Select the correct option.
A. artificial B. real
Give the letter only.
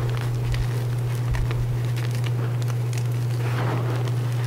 B